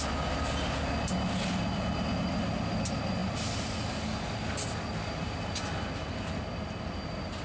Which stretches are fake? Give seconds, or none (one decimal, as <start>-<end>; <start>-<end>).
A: none